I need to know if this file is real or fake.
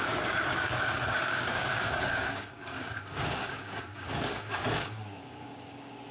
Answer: fake